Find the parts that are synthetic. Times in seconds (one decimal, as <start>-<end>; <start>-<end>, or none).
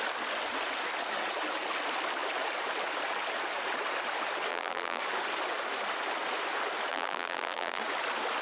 4.5-5.0; 6.9-7.8